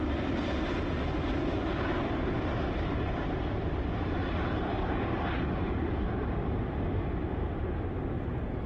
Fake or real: real